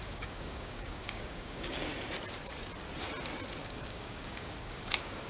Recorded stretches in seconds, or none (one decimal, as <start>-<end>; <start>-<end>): 1.9-3.6